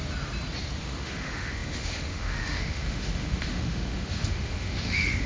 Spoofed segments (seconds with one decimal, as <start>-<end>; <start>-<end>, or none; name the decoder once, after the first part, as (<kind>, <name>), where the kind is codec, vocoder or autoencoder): 0.8-5.3 (autoencoder, DAC-VAE)